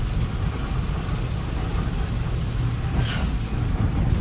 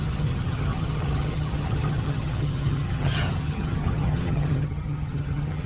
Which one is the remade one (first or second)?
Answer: second